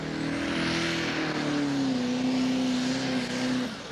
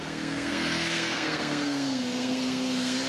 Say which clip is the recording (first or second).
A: first